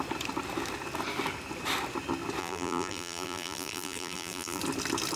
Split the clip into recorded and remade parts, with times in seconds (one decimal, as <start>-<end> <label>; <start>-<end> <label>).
0.0-2.4 recorded; 2.4-4.6 remade; 4.6-5.2 recorded